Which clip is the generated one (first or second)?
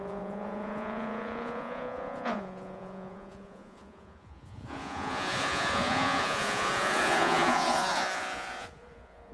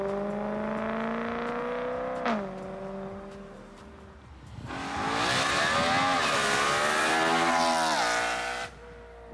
first